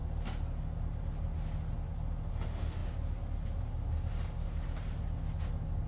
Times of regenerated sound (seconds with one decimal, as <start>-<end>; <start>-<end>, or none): none